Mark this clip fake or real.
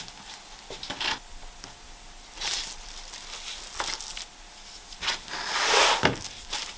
real